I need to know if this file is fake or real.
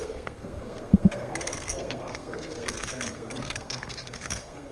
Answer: fake